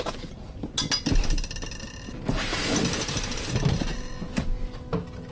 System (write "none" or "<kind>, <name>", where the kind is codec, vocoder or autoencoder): none